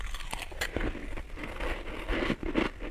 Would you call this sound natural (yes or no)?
yes